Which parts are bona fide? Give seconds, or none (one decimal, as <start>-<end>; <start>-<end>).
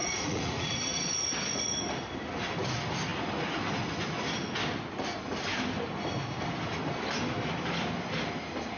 0.8-8.8